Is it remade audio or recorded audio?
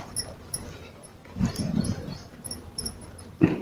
remade